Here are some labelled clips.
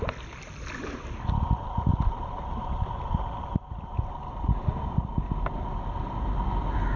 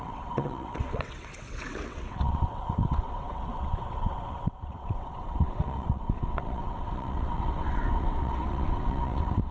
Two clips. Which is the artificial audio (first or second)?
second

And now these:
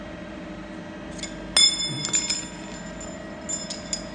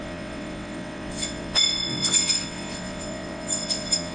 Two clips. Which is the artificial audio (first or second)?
second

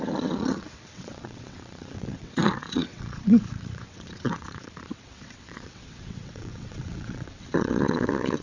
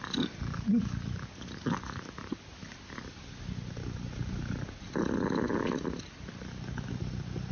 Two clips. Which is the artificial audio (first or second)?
first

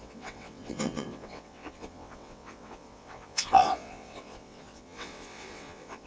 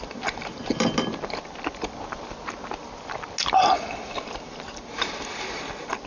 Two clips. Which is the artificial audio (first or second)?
first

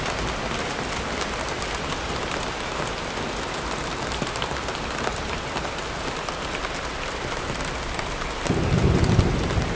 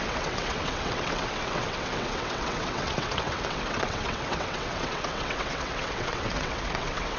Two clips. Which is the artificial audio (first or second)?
second